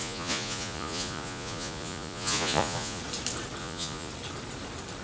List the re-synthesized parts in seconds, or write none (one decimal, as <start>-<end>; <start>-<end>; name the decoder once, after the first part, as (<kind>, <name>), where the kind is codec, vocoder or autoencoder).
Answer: 0.0-3.0 (vocoder, Vocos); 3.6-4.1